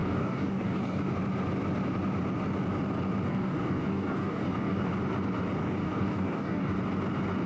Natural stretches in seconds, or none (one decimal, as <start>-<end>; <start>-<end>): 1.1-3.3; 4.9-5.6; 6.8-7.5